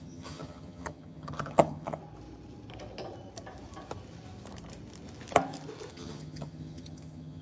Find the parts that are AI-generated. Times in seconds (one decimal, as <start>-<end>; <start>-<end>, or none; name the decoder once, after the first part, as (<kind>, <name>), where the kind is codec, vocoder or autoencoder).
0.0-2.0 (vocoder, HiFi-GAN); 5.9-7.4